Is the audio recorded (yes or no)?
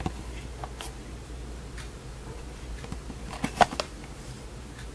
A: yes